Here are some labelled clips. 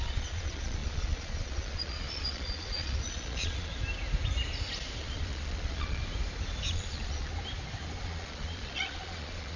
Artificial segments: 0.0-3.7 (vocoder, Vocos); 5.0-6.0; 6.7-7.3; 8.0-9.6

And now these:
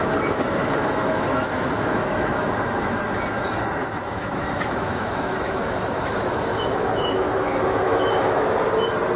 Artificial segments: 0.6-3.0 (autoencoder, DAC-VAE); 3.8-8.4